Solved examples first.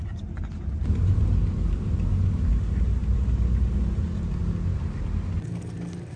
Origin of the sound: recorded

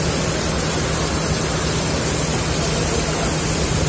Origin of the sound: recorded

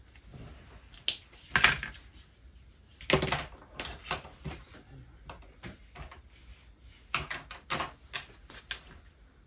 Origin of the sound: recorded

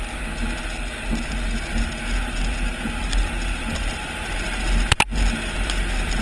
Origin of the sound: recorded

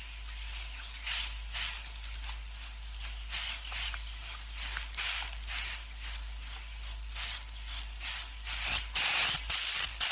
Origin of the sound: recorded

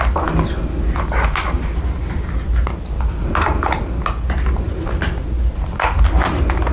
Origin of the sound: recorded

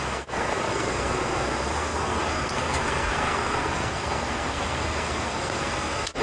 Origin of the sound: remade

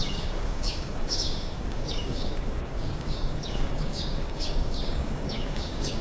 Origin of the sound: remade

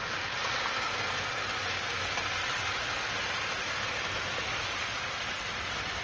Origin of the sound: recorded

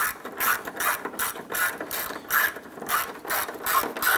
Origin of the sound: recorded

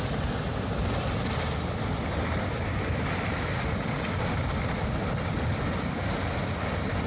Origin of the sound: recorded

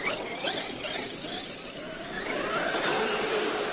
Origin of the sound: recorded